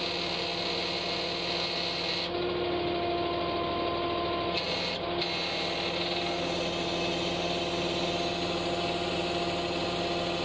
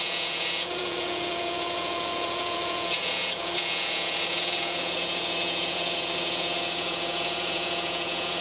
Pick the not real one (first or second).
second